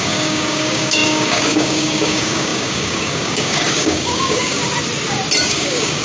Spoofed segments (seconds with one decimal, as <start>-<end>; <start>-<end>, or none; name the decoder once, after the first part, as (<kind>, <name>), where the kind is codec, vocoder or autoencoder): 0.0-4.6 (codec, DAC); 5.4-6.0